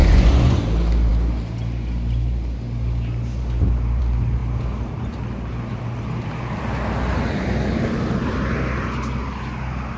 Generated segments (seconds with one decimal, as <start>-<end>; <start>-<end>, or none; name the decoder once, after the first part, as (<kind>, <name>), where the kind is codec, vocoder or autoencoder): 0.0-0.6 (vocoder, Vocos)